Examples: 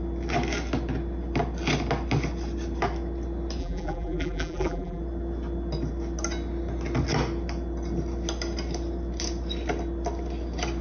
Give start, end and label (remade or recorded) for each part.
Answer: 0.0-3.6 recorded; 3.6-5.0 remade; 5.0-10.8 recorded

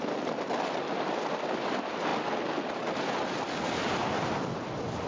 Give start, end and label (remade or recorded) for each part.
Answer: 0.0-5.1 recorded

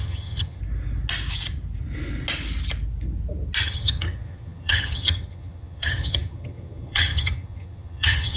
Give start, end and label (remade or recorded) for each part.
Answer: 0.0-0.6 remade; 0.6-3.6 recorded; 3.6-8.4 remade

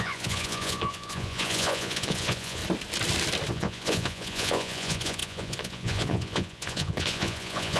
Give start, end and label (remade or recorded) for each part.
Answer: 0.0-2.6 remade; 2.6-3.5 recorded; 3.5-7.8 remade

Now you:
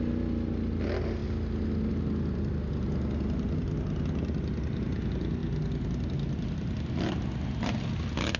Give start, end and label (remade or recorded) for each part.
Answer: 0.0-8.4 recorded

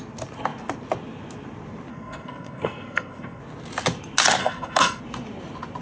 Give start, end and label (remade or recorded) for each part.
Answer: 0.0-1.9 recorded; 1.9-3.4 remade; 3.4-4.4 recorded; 4.4-5.0 remade; 5.0-5.8 recorded

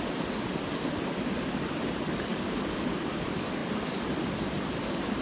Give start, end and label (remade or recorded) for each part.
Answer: 0.0-5.2 recorded